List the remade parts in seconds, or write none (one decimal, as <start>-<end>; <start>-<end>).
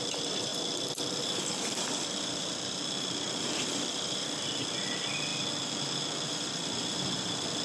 0.0-5.3; 6.3-7.6